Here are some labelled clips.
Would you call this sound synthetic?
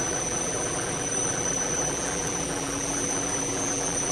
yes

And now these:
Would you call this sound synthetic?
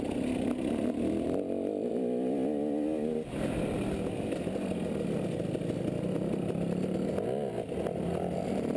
no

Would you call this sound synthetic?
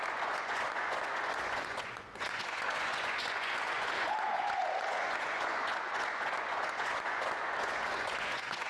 yes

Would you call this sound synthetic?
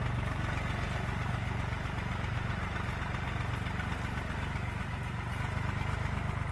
no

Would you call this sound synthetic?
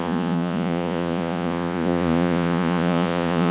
yes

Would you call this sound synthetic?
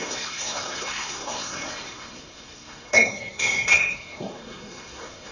yes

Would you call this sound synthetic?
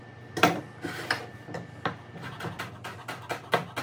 no